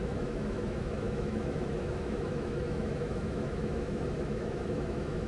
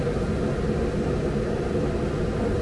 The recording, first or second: second